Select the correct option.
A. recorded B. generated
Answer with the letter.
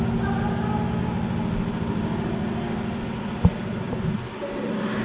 A